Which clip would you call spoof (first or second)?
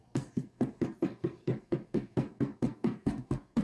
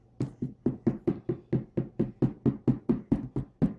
first